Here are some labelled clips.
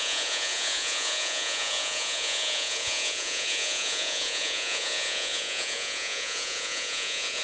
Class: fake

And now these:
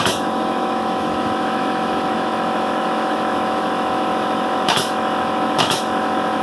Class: fake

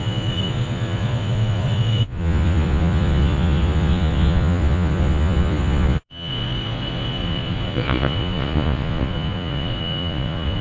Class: fake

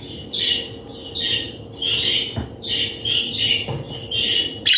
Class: real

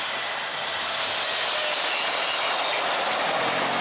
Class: real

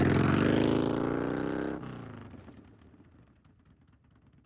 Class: real